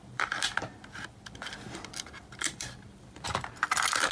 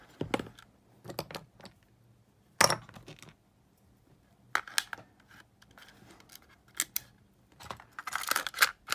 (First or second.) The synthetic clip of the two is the first